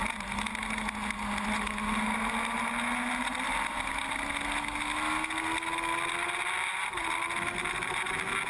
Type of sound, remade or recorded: recorded